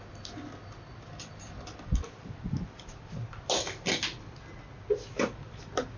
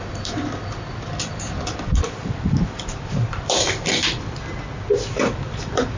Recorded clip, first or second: first